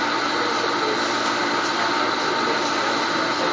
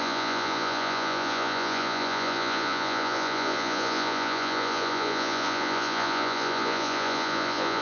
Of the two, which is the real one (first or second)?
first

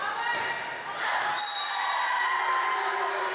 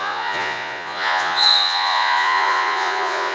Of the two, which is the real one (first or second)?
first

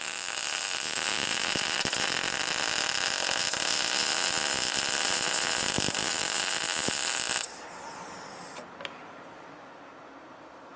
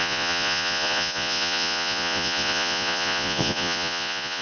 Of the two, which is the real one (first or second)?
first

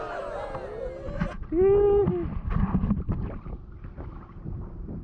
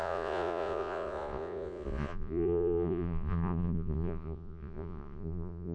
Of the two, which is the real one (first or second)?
first